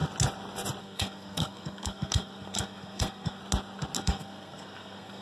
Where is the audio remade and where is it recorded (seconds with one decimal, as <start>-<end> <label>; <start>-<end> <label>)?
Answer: 0.0-0.8 recorded; 0.8-3.4 remade; 3.4-4.0 recorded; 4.0-5.2 remade